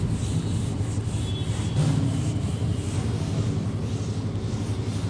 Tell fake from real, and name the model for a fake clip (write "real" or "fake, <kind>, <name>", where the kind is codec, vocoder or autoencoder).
real